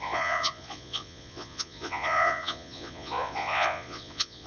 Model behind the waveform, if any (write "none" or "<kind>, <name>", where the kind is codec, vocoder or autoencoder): vocoder, Vocos